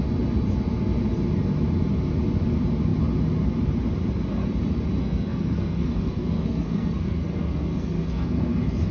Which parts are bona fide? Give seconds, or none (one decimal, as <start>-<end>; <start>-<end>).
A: 0.0-5.0